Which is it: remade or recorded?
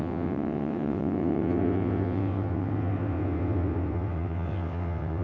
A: remade